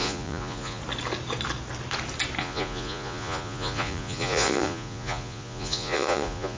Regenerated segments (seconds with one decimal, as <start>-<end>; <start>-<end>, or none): 0.0-0.8; 2.4-6.6

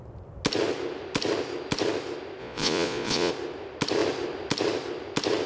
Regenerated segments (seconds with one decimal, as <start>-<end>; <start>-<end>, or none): 2.4-3.3

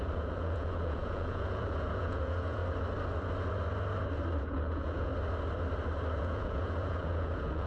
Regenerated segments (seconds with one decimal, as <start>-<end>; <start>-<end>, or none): 0.0-2.6; 4.4-5.1; 6.2-7.7

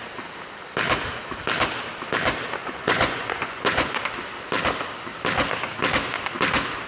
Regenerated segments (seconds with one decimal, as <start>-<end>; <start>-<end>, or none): 2.6-4.0

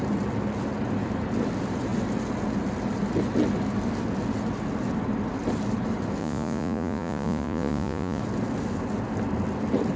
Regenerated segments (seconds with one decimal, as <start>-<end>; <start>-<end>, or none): 6.2-8.2

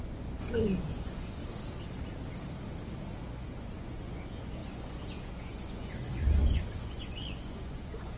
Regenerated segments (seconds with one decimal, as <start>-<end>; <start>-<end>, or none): 0.0-1.4; 3.3-8.2